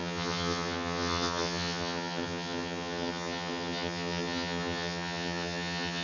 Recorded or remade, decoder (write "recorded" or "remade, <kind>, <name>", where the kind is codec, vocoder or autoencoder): remade, vocoder, HiFi-GAN